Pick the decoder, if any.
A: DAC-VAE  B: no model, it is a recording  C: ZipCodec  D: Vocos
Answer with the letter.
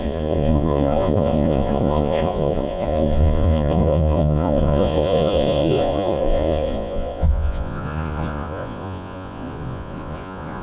D